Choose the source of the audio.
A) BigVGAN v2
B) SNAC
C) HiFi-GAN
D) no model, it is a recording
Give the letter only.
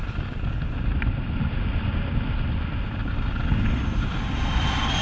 D